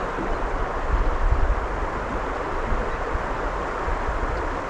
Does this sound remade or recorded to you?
recorded